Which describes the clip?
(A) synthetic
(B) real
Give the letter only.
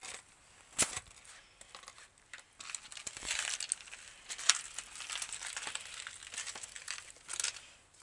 B